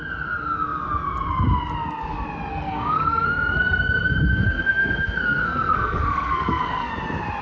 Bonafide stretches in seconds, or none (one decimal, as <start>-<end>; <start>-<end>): 0.0-2.5; 6.9-7.4